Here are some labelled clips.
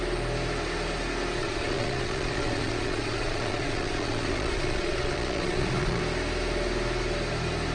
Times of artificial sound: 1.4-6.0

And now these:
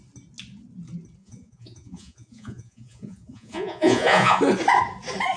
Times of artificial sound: 1.2-4.4

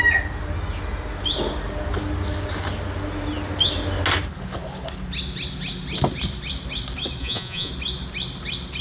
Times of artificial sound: 7.2-7.7

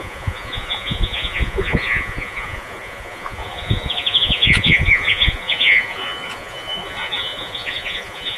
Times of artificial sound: 0.0-8.4

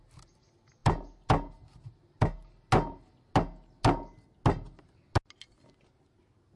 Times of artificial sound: none